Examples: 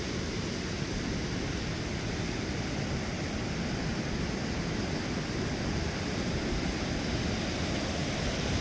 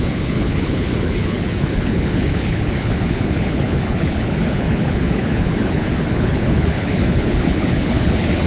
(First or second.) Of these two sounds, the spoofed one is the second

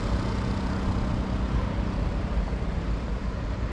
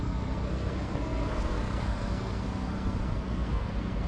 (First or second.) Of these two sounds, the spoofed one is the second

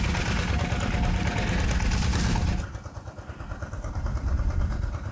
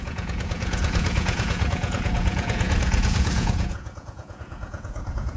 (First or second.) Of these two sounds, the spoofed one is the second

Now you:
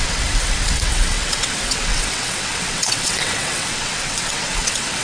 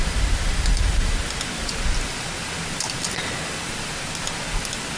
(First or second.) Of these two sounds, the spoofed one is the first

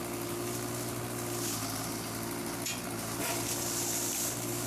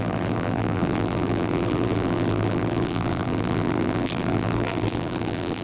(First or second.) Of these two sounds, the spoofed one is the second